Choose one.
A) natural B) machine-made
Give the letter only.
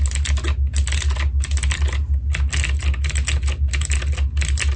A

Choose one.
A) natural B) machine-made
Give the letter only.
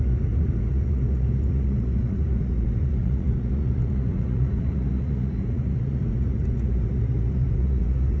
B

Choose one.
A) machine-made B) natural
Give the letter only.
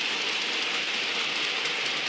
B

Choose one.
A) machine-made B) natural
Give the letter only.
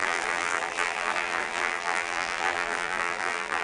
A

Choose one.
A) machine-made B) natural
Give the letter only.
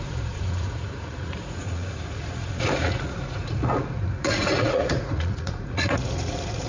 A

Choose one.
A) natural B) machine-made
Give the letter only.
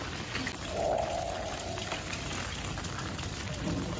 A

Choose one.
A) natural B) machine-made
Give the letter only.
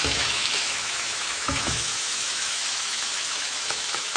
B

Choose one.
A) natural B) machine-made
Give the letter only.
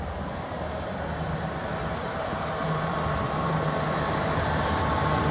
B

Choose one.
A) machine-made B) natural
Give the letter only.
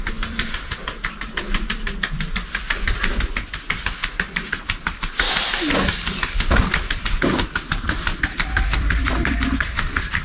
A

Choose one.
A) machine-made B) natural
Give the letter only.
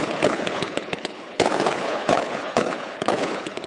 A